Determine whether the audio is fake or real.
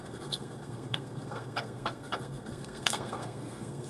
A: fake